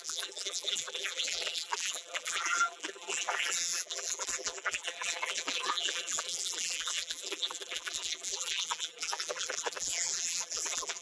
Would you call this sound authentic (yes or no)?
no